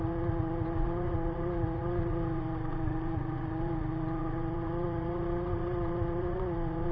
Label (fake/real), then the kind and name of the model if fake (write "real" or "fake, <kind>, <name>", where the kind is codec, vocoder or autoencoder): fake, vocoder, Vocos